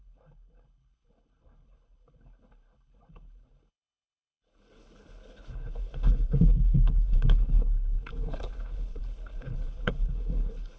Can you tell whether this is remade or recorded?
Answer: remade